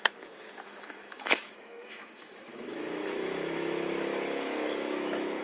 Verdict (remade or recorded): remade